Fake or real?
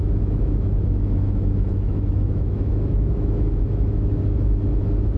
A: fake